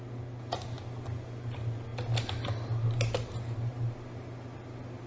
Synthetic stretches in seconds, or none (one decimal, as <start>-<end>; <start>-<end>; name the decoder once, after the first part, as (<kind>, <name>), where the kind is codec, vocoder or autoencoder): none